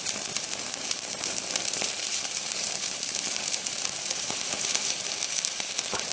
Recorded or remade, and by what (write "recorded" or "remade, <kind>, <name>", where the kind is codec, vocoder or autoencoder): remade, vocoder, BigVGAN v2